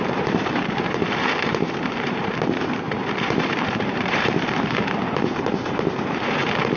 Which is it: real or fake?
fake